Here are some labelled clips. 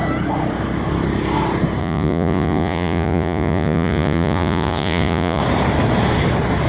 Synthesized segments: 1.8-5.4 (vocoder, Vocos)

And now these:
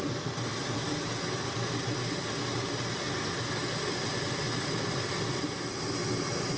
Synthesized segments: none

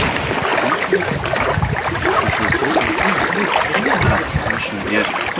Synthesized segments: none

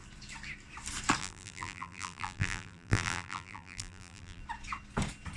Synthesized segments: 1.2-4.4 (vocoder, BigVGAN v2)

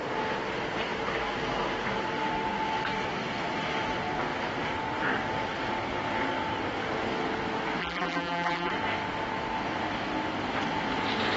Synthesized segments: 7.8-8.7 (vocoder, BigVGAN v2)

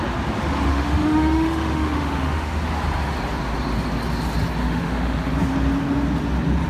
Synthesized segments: 0.7-2.6 (autoencoder, DAC-VAE); 4.6-5.3

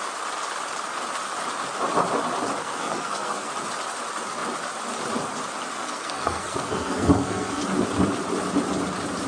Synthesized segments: 2.6-3.5 (codec, SNAC); 5.7-7.6